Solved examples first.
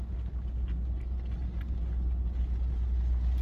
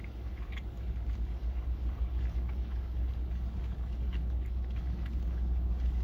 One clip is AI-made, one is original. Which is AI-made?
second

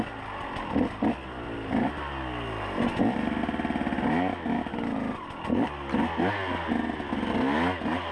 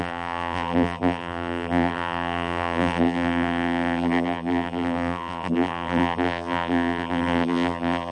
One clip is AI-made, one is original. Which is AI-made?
second